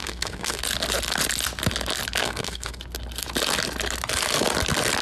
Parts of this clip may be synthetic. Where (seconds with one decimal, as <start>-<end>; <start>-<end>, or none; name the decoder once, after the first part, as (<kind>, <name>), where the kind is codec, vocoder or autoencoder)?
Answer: 0.0-0.6 (codec, SNAC); 2.2-2.8